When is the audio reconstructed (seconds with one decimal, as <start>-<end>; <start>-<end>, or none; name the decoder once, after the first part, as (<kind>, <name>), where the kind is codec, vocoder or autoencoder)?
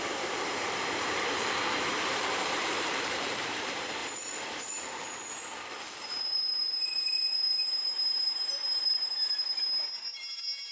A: 0.0-4.0 (vocoder, BigVGAN v2); 5.4-8.6; 10.1-10.7